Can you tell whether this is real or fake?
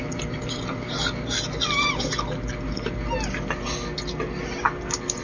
real